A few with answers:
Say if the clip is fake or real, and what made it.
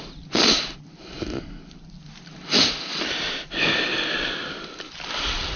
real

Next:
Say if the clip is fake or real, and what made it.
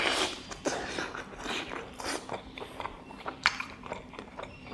fake, vocoder, BigVGAN v2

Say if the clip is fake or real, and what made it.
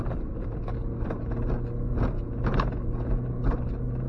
real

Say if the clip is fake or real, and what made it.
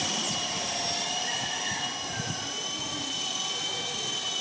real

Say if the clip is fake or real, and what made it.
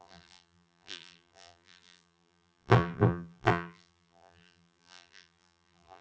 fake, vocoder, BigVGAN v2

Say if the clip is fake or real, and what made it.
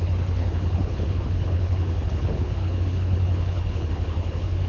fake, codec, HILCodec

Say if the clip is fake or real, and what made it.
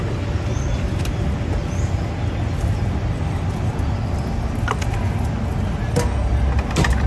real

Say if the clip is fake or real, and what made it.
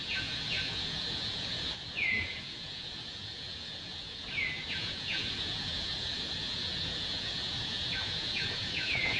fake, vocoder, Vocos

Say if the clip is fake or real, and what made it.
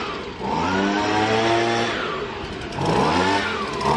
real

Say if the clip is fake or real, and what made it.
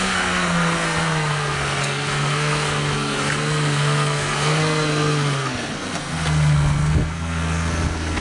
fake, codec, SNAC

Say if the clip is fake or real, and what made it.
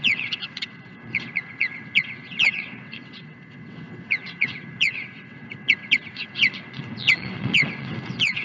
fake, vocoder, WaveNeXt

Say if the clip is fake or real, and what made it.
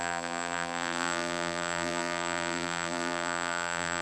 fake, vocoder, BigVGAN v2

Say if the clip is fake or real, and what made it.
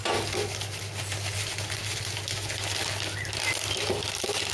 real